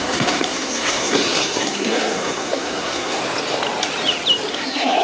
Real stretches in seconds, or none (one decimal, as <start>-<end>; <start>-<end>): 3.2-4.5